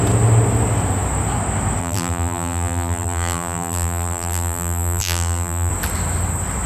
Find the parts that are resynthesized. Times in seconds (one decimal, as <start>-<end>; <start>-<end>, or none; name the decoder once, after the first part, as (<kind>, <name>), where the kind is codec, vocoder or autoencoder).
1.8-5.7 (vocoder, BigVGAN v2)